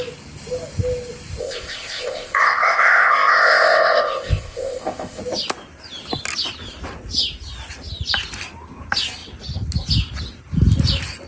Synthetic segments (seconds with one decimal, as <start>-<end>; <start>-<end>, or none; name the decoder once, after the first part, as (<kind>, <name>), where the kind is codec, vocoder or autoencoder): 1.4-5.2 (codec, ZipCodec)